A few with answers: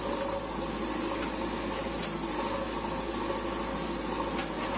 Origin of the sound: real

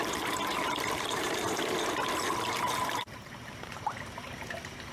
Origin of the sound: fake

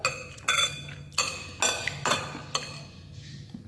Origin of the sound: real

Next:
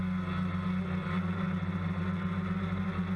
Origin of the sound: real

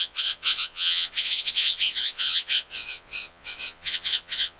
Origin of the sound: fake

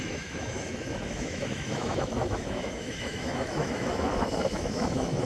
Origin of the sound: fake